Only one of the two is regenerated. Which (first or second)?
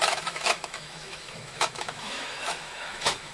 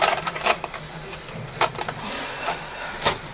first